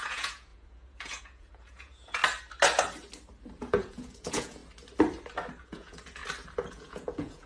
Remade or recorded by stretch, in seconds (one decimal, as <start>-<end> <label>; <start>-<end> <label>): 0.0-2.2 remade; 2.2-3.6 recorded; 3.6-4.6 remade; 4.6-5.6 recorded; 5.6-6.2 remade; 6.2-6.7 recorded; 6.7-7.5 remade